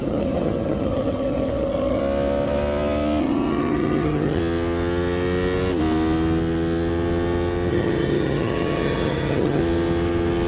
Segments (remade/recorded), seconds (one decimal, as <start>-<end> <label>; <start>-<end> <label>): 0.0-2.0 remade; 2.0-3.2 recorded; 3.2-4.4 remade; 4.4-7.7 recorded; 7.7-9.6 remade; 9.6-10.5 recorded

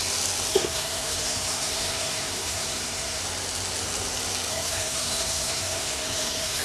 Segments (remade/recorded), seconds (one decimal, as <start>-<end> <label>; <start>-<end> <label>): 0.0-0.5 recorded; 0.5-3.2 remade; 3.2-4.5 recorded; 4.5-6.6 remade

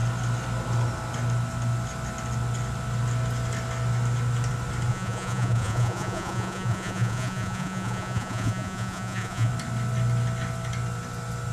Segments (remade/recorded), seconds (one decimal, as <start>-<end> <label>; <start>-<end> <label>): 0.0-4.9 recorded; 4.9-9.5 remade; 9.5-11.5 recorded